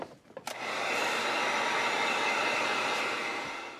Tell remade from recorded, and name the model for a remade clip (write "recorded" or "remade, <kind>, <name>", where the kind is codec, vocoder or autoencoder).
recorded